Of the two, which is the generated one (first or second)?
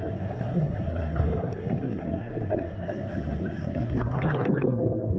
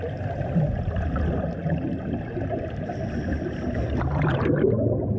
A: first